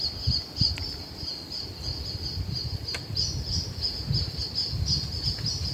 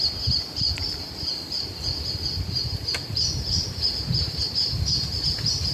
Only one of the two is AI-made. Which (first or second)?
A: second